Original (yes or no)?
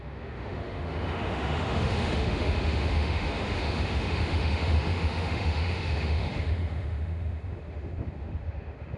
no